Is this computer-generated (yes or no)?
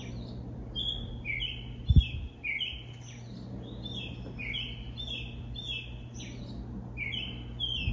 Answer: no